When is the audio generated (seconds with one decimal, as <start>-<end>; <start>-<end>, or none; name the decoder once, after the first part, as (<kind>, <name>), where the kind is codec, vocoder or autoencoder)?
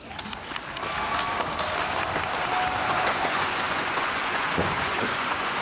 2.8-5.6 (vocoder, Vocos)